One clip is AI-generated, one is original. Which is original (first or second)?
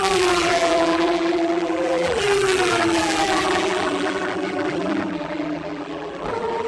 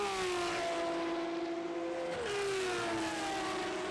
second